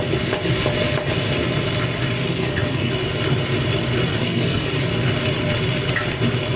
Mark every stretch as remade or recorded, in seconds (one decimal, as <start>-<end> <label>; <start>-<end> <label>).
0.0-2.3 recorded; 2.3-2.9 remade; 2.9-4.1 recorded; 4.1-4.7 remade; 4.7-6.6 recorded